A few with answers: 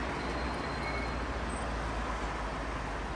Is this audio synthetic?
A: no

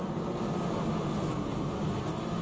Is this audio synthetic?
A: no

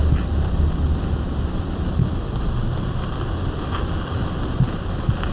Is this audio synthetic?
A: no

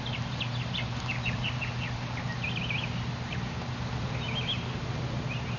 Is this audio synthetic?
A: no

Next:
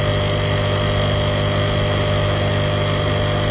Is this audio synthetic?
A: no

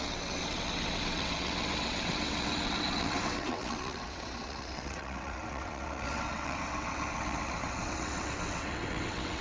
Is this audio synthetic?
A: yes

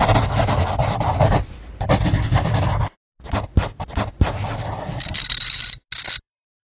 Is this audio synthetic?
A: no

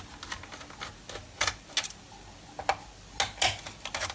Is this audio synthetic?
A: no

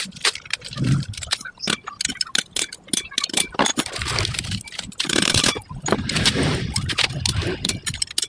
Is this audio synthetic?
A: no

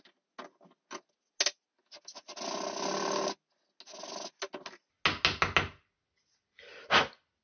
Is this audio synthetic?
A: no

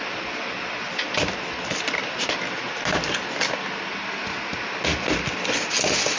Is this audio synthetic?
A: no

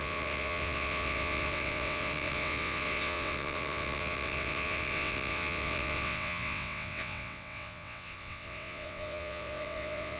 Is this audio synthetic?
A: yes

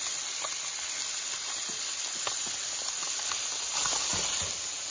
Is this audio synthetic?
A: no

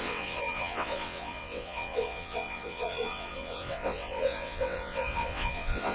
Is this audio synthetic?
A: yes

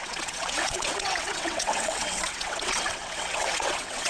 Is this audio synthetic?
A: yes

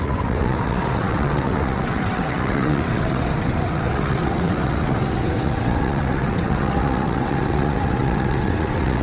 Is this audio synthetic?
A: yes